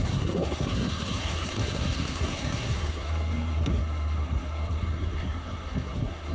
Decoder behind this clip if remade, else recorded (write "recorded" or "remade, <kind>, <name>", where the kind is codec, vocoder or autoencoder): remade, codec, SNAC